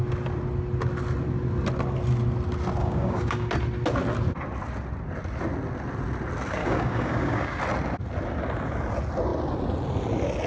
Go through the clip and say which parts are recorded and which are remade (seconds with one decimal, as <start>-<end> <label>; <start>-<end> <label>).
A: 0.0-2.8 recorded; 2.8-3.5 remade; 3.5-6.6 recorded; 6.6-7.6 remade; 7.6-10.5 recorded